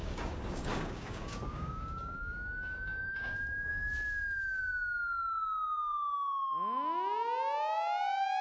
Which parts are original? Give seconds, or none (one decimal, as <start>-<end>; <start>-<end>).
3.7-8.4